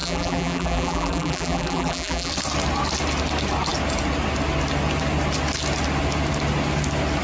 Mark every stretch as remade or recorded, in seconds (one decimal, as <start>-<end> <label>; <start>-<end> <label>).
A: 0.0-2.3 remade; 2.3-7.2 recorded